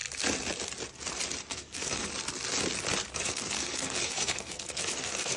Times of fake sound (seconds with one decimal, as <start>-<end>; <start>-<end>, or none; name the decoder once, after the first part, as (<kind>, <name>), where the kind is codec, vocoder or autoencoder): 1.5-2.1 (codec, SNAC); 3.1-5.4